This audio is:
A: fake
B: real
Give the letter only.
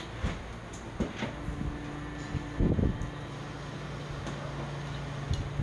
B